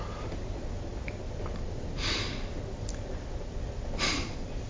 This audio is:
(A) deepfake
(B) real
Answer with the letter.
B